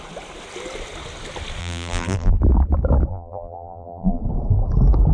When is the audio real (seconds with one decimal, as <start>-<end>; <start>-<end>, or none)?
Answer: 0.0-1.6; 2.4-3.1; 4.2-5.1